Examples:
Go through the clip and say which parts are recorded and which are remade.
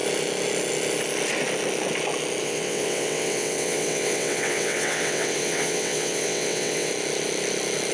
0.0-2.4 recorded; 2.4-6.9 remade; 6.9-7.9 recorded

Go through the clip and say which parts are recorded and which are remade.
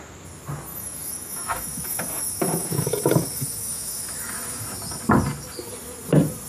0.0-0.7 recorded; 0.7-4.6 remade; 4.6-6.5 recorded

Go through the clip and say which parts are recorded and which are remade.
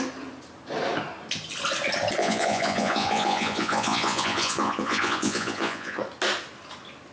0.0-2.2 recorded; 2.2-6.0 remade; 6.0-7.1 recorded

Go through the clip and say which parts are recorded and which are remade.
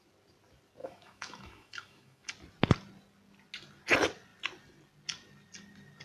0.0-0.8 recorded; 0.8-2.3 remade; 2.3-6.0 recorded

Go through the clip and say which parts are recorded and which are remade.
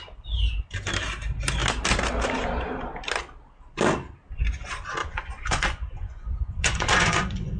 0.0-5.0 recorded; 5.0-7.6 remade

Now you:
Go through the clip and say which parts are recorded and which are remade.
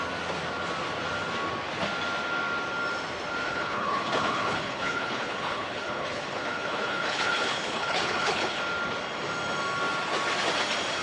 0.0-3.5 recorded; 3.5-8.6 remade; 8.6-11.0 recorded